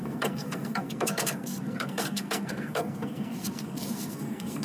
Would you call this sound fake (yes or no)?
yes